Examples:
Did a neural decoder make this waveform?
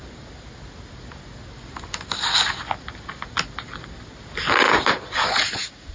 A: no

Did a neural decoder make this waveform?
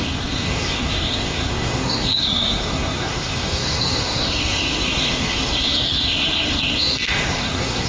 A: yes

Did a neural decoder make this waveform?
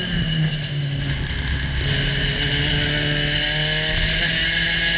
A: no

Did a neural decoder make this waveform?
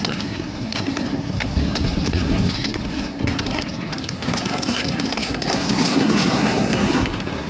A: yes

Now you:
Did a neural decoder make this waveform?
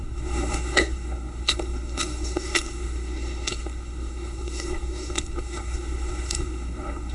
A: yes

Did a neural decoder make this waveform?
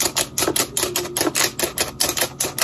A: no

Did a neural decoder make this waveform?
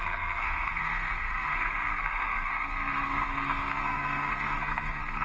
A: yes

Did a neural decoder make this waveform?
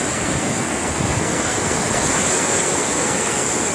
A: yes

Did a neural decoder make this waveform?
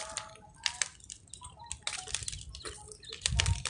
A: no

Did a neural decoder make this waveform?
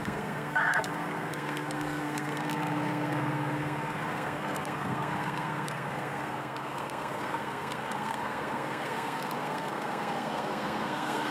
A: yes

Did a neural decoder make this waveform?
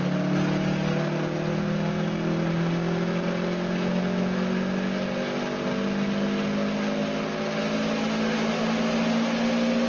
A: no